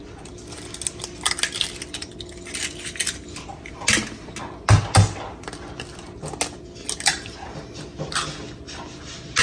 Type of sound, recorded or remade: recorded